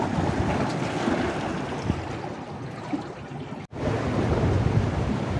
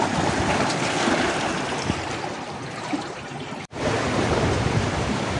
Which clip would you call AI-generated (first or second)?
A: second